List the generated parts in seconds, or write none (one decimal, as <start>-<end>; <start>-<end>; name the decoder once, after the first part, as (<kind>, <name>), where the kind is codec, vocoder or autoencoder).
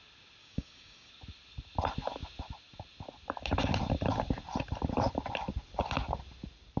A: 0.4-1.1 (codec, DAC)